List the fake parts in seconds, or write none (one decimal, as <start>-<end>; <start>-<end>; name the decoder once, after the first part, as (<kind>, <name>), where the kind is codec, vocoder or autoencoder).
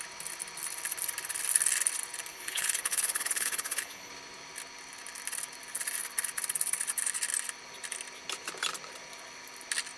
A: 2.3-4.1 (codec, HILCodec)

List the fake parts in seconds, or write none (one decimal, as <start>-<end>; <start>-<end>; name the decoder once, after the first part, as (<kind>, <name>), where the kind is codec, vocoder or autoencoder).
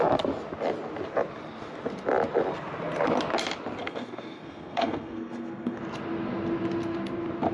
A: 3.8-5.8 (codec, SNAC)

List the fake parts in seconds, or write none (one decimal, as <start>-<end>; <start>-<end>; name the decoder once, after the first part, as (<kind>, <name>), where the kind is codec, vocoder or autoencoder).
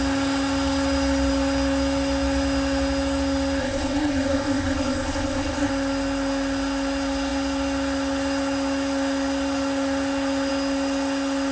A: 3.6-5.7 (codec, ZipCodec)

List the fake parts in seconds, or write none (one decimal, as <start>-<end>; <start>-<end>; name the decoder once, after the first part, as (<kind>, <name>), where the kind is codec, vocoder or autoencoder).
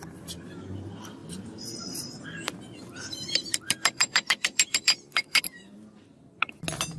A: 1.2-5.4 (vocoder, BigVGAN v2)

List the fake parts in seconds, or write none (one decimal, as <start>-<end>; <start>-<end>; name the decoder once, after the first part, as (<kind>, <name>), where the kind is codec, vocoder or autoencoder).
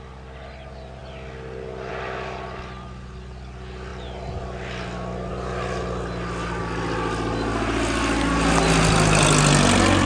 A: none